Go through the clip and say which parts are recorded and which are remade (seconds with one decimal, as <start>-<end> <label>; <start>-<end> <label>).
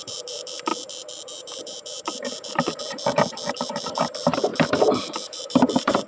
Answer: 0.0-6.1 remade